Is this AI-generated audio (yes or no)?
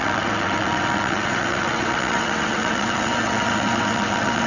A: yes